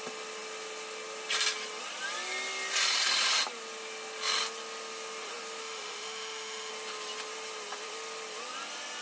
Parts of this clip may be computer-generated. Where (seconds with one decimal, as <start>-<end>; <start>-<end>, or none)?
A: 5.6-6.7